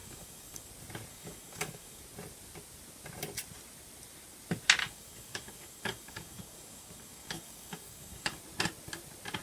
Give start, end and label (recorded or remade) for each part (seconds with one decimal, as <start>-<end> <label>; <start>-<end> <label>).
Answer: 0.0-0.7 remade; 0.7-1.1 recorded; 1.1-2.0 remade; 2.0-4.8 recorded; 4.8-8.4 remade; 8.4-9.4 recorded